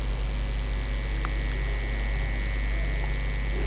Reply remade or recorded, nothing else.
recorded